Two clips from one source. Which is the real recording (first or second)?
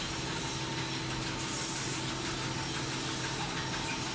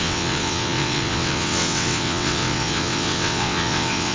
first